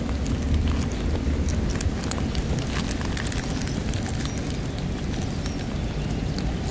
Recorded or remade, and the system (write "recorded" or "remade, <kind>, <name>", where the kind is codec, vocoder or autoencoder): recorded